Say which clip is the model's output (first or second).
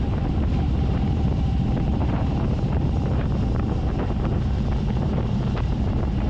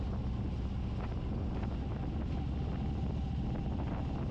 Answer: first